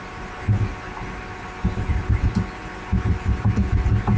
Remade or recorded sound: recorded